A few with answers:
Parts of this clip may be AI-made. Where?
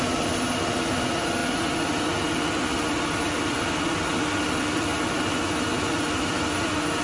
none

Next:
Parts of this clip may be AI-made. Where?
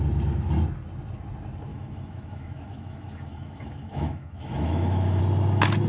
1.7-5.2 (autoencoder, DAC-VAE)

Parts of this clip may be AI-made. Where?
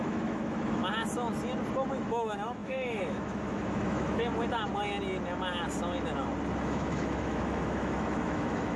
0.0-0.8 (autoencoder, DAC-VAE); 1.9-4.3; 6.6-8.8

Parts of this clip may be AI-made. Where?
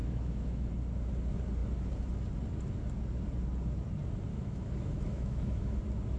0.0-0.7 (autoencoder, DAC-VAE); 4.3-5.8